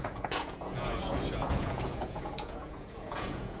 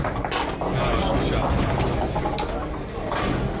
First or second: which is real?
second